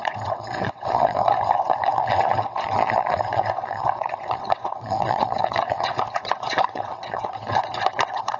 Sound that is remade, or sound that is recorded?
remade